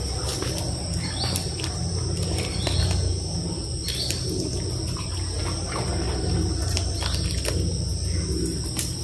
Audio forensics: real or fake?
real